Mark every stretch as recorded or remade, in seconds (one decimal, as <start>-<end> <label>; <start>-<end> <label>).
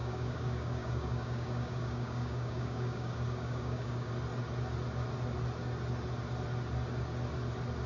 0.0-4.1 remade; 4.1-7.9 recorded